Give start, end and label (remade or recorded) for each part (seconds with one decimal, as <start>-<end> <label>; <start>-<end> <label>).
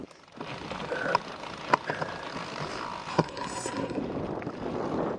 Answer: 0.0-3.1 recorded; 3.1-4.0 remade; 4.0-5.2 recorded